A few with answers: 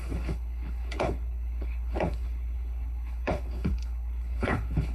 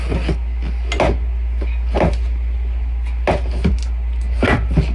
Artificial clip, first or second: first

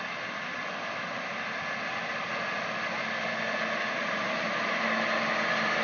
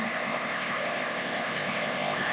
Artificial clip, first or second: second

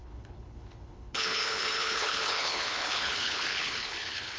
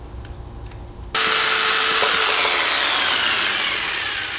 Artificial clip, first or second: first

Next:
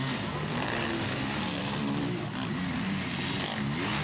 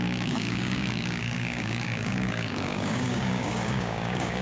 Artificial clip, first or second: second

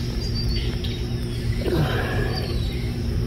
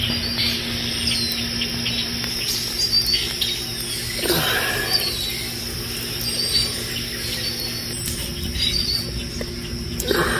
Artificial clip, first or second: first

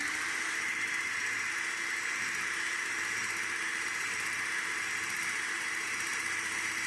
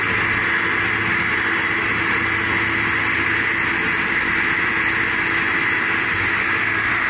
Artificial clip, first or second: first